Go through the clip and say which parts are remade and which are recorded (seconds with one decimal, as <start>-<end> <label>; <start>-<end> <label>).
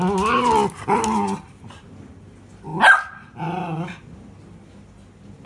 0.0-5.5 recorded